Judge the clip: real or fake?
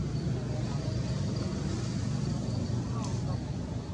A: real